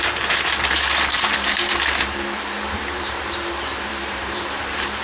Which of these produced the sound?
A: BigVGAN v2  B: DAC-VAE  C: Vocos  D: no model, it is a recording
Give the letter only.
A